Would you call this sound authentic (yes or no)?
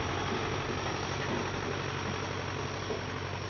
yes